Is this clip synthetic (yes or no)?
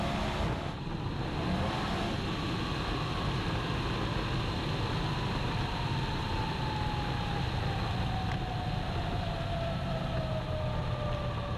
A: no